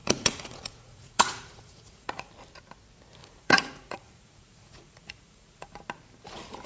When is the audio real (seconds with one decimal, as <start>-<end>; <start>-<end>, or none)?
2.3-3.2; 5.8-6.7

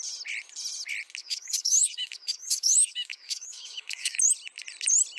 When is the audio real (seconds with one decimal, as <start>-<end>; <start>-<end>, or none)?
0.0-1.2; 4.3-5.2

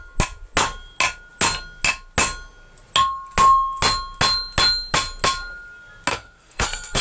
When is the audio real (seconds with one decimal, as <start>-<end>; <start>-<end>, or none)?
0.0-6.1

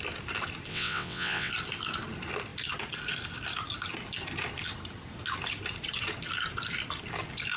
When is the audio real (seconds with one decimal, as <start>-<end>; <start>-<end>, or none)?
0.0-0.7; 1.5-7.6

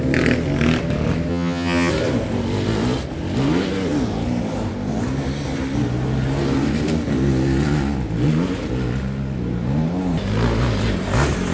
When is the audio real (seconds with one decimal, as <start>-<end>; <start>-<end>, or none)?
0.0-1.3; 1.9-11.5

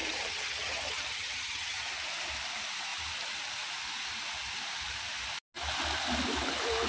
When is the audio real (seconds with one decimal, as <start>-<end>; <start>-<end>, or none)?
1.9-6.9

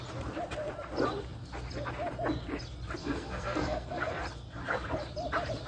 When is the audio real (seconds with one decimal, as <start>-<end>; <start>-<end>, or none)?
0.0-3.0; 4.2-5.7